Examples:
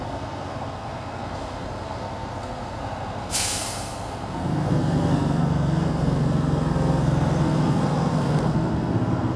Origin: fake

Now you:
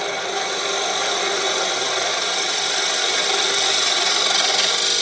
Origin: real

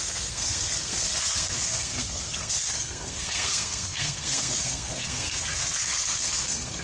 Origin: fake